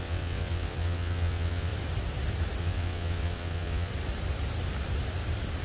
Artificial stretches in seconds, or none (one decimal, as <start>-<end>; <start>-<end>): 0.0-1.7; 2.6-3.9